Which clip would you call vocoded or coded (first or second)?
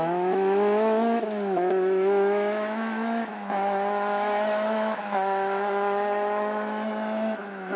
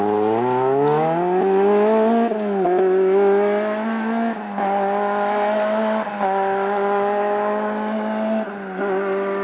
first